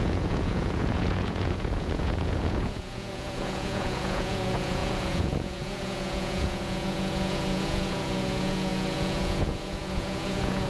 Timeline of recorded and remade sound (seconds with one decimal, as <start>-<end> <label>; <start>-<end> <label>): 0.0-10.7 remade